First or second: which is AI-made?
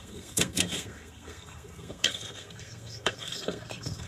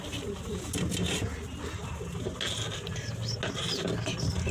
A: first